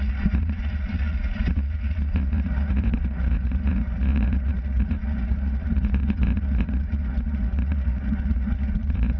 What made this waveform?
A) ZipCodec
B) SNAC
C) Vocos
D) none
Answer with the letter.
C